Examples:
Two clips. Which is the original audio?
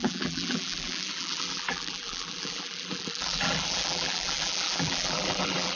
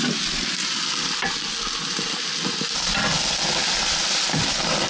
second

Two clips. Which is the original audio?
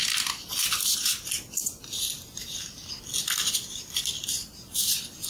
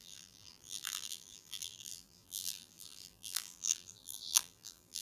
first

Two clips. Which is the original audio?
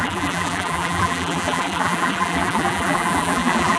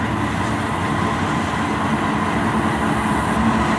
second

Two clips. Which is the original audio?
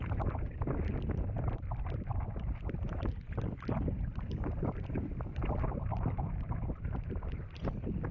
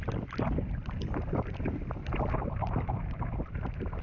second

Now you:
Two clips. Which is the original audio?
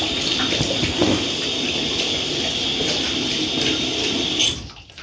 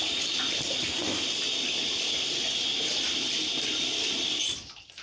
first